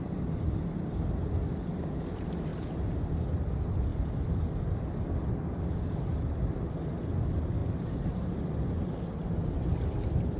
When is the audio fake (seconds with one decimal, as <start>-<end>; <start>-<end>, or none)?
3.9-5.0